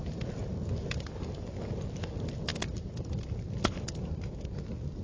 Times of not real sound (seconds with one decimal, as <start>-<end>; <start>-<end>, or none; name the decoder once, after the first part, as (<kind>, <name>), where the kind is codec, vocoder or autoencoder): 0.5-1.2 (vocoder, BigVGAN v2); 2.5-4.4